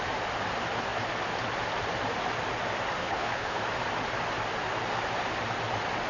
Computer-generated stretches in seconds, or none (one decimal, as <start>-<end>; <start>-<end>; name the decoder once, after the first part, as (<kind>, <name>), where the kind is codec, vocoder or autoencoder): 3.0-3.6 (codec, HILCodec)